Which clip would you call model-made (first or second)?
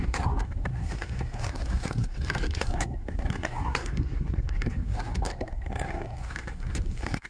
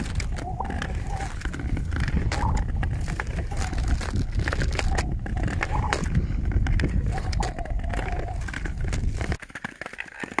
first